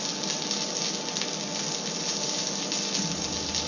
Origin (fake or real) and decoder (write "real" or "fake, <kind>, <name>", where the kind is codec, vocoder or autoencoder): real